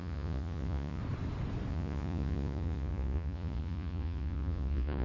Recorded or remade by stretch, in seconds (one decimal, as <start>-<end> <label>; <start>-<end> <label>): 0.0-1.0 remade; 1.0-1.7 recorded; 1.7-5.0 remade